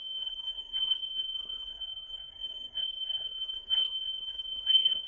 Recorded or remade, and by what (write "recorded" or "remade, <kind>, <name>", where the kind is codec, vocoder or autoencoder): remade, codec, SNAC